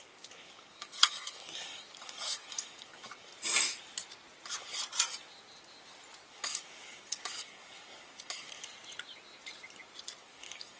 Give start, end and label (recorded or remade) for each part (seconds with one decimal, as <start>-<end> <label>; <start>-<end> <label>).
0.0-3.3 remade; 3.3-6.3 recorded; 6.3-8.7 remade; 8.7-10.2 recorded; 10.2-10.8 remade